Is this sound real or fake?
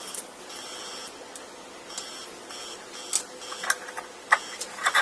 real